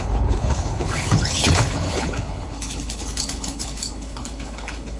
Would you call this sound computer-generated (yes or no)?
yes